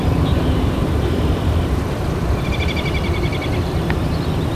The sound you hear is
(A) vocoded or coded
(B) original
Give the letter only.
A